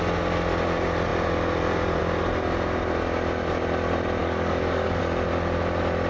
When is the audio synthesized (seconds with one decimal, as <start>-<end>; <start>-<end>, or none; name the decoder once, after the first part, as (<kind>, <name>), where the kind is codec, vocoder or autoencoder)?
4.2-5.0 (codec, DAC)